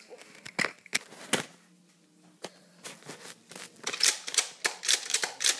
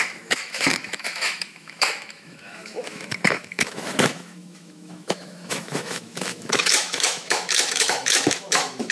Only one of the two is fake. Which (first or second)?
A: second